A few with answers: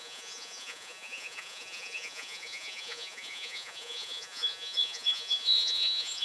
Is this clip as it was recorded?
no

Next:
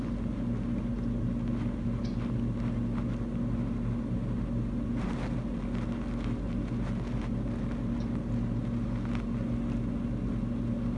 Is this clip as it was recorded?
yes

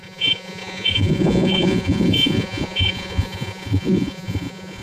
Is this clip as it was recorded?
no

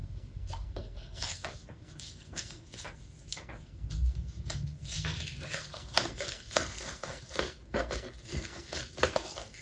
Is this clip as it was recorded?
no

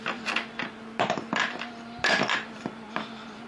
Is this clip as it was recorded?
yes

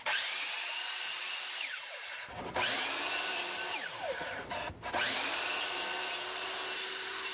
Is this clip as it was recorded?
yes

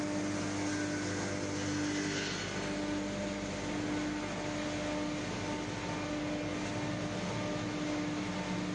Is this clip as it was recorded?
yes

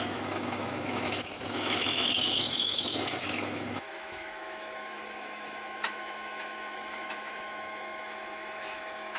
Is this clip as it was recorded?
no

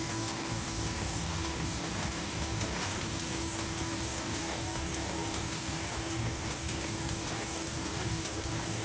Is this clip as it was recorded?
no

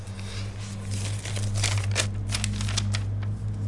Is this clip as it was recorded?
yes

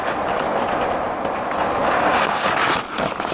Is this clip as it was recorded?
yes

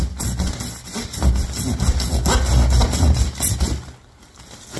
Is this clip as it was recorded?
yes